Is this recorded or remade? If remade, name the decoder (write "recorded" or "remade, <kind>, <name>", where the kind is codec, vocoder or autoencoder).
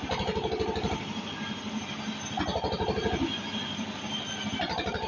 recorded